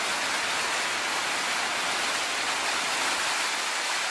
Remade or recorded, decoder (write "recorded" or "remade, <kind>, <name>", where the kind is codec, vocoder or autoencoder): recorded